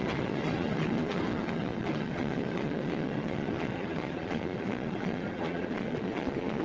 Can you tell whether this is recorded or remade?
remade